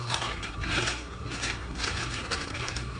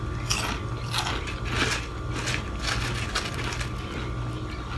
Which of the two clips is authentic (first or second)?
second